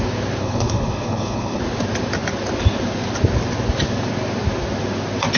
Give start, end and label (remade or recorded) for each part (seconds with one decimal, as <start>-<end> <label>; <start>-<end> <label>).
0.0-0.4 recorded; 0.4-1.6 remade; 1.6-5.4 recorded